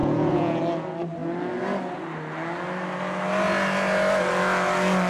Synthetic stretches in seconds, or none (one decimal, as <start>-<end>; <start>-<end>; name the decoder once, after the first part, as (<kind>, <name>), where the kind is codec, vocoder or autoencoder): 0.0-0.6 (vocoder, Vocos)